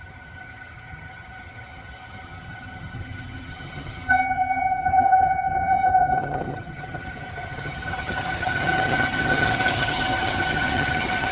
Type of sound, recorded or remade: remade